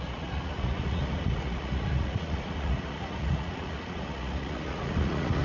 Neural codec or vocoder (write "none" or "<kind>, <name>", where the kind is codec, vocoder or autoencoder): vocoder, Vocos